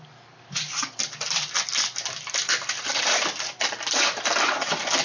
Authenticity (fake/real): fake